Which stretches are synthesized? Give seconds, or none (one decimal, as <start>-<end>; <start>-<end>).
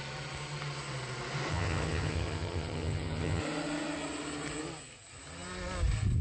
1.5-3.4